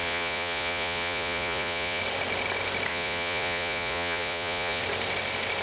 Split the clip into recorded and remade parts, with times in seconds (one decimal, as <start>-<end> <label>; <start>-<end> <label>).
0.0-2.0 remade; 2.0-2.9 recorded; 2.9-4.8 remade; 4.8-5.6 recorded